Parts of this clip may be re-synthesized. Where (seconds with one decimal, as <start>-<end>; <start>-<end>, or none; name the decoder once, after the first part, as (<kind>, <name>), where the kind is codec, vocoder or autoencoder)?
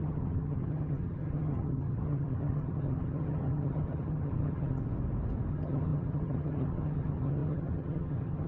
0.0-4.8 (vocoder, HiFi-GAN); 5.5-8.5